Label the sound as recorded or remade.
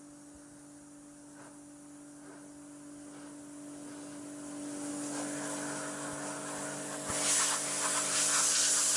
recorded